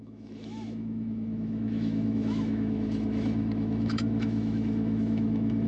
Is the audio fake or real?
fake